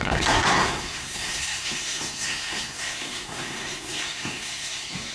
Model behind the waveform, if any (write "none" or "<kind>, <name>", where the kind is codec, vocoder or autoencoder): codec, SNAC